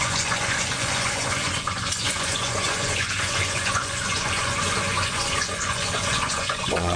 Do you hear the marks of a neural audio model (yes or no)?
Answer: yes